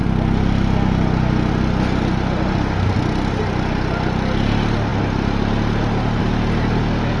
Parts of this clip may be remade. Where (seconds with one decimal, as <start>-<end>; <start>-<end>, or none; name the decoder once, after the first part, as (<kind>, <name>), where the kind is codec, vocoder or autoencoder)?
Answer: none